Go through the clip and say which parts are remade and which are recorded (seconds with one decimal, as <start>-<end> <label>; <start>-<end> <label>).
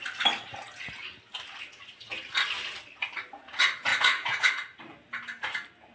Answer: 0.0-3.9 recorded; 3.9-4.5 remade; 4.5-5.9 recorded